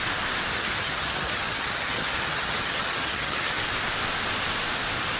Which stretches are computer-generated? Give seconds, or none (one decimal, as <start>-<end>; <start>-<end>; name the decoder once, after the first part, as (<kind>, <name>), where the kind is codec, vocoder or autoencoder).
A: 0.5-3.6 (vocoder, HiFi-GAN)